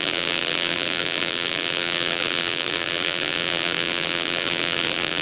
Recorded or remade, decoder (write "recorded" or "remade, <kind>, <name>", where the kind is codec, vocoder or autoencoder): remade, vocoder, BigVGAN v2